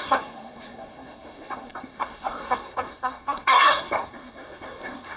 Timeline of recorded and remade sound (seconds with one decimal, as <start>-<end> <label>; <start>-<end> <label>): 0.0-5.2 remade